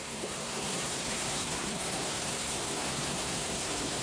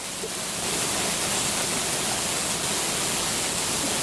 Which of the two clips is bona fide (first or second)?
second